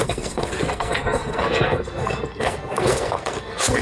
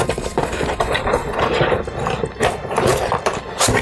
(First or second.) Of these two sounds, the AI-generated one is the first